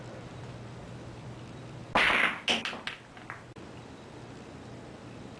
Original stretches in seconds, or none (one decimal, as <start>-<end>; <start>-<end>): 0.0-5.4